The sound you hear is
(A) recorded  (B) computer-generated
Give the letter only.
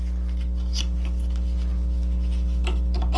A